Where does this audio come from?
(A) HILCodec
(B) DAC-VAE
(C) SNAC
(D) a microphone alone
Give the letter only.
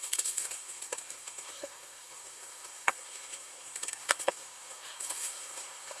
C